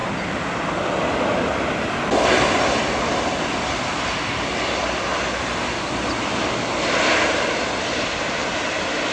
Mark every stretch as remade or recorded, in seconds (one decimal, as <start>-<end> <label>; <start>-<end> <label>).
0.0-1.3 remade; 1.3-9.1 recorded